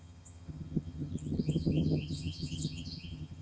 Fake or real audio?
fake